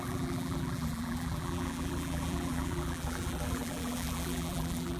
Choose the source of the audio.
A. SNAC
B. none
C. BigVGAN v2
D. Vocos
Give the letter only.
C